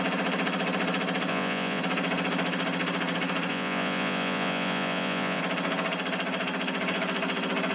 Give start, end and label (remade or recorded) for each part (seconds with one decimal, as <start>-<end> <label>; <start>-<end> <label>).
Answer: 0.0-1.3 recorded; 1.3-1.8 remade; 1.8-3.5 recorded; 3.5-5.4 remade; 5.4-7.7 recorded